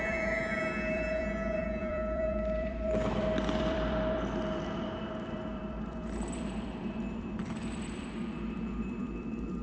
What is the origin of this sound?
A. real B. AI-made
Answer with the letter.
B